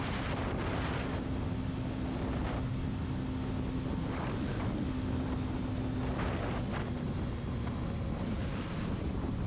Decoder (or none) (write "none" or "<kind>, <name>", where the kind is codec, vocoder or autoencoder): none